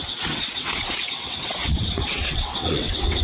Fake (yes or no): yes